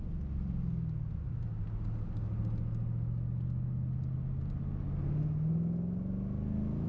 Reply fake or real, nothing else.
real